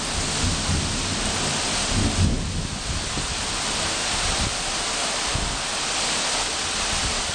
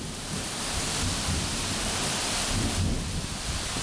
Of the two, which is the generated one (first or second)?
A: second